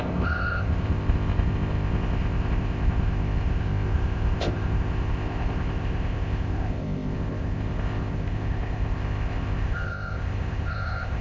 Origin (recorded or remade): remade